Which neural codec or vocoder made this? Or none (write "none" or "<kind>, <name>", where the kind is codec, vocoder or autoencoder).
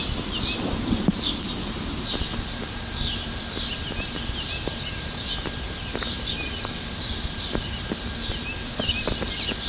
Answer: none